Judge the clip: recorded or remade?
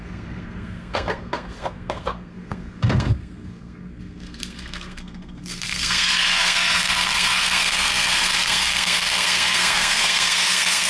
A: remade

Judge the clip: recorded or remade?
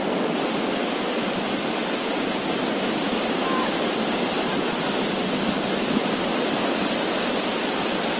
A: recorded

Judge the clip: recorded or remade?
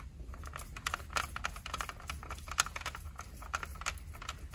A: recorded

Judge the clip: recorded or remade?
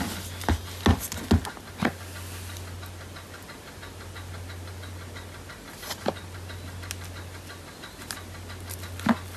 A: recorded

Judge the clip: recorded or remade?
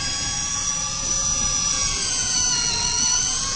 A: remade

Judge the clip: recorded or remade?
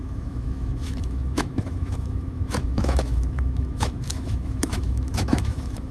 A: remade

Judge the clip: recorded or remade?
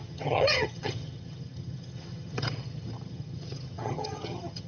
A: remade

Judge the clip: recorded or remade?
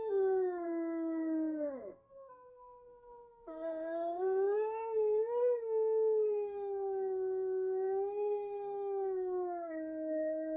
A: remade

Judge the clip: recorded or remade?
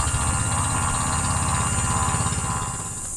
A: recorded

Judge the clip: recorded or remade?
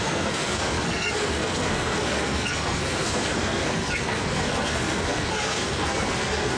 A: remade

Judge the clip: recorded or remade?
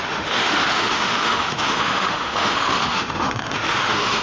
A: remade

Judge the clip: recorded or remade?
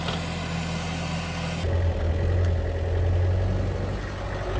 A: recorded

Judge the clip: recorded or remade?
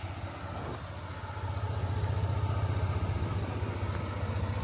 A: recorded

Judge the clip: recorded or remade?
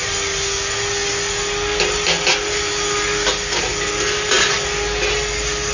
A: recorded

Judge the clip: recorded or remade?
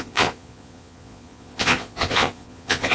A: remade